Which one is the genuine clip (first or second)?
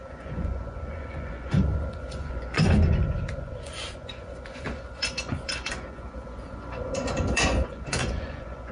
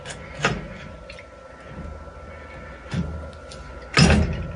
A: second